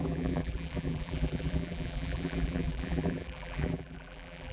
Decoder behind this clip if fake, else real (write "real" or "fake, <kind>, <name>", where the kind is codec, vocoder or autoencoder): fake, vocoder, BigVGAN v2